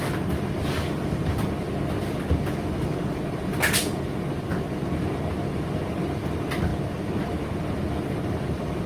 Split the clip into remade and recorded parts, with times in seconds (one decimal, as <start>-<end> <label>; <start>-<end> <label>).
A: 0.0-8.9 recorded